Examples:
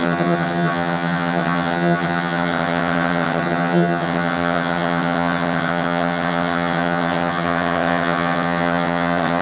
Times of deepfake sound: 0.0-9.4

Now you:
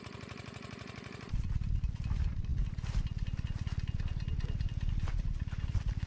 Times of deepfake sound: none

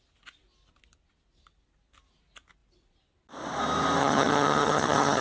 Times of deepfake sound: 4.0-5.2

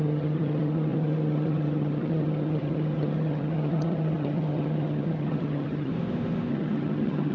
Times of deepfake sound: 0.0-5.9; 6.5-7.3